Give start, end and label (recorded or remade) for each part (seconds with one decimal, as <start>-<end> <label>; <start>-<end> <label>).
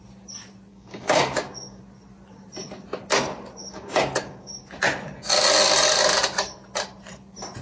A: 0.0-0.7 recorded; 0.7-1.8 remade; 1.8-3.6 recorded; 3.6-4.6 remade; 4.6-7.6 recorded